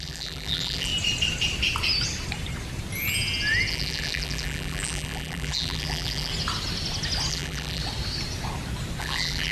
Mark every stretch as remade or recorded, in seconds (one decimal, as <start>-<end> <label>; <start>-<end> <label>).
0.0-0.9 remade; 0.9-3.7 recorded; 3.7-6.3 remade; 6.3-7.3 recorded; 7.3-7.8 remade; 7.8-9.0 recorded; 9.0-9.5 remade